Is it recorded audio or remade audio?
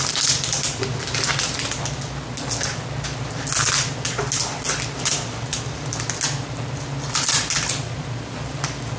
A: recorded